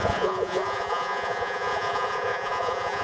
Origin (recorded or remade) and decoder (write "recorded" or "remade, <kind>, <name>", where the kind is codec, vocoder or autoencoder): remade, vocoder, Vocos